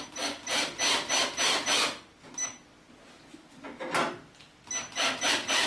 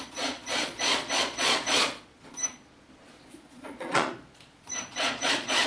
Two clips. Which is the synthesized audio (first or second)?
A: second